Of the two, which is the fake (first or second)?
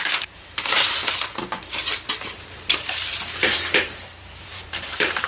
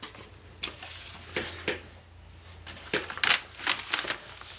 first